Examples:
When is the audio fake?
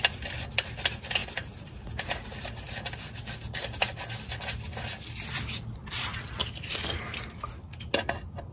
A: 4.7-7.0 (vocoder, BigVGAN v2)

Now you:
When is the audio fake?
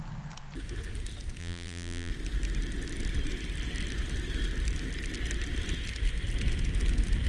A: 1.4-2.1 (vocoder, BigVGAN v2)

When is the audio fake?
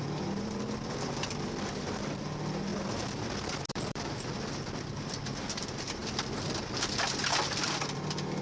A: 0.0-2.7 (vocoder, BigVGAN v2); 3.7-6.0; 7.2-8.4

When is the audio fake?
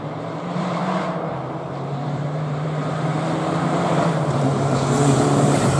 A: 0.0-5.8 (vocoder, BigVGAN v2)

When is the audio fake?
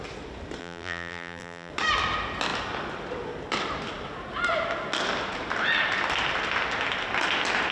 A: 0.6-1.7 (vocoder, BigVGAN v2)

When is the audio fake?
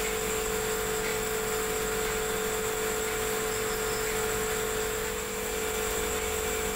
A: none